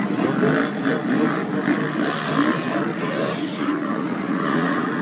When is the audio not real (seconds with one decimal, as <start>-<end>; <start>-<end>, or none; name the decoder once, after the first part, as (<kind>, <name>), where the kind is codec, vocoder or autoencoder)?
2.9-5.0 (vocoder, Vocos)